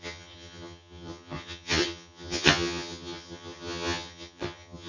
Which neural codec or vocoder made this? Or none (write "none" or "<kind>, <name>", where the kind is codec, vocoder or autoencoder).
vocoder, HiFi-GAN